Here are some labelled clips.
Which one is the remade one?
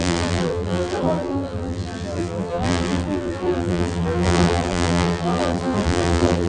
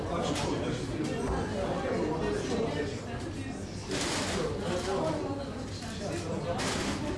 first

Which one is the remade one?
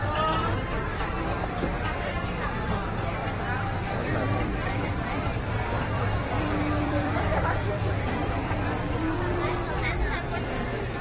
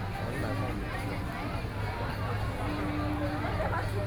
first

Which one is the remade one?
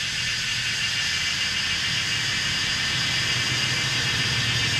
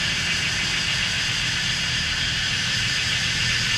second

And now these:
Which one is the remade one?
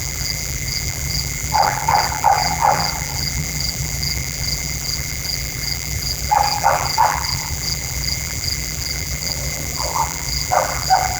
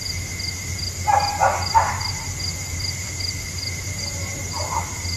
first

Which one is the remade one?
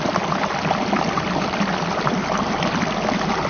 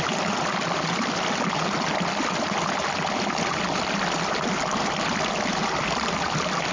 first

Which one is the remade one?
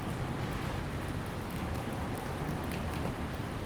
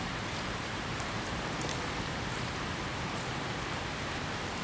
second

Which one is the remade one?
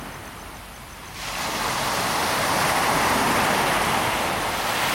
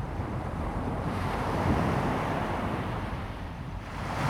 second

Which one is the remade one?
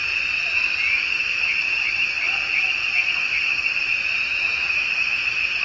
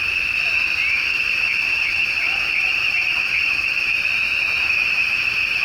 second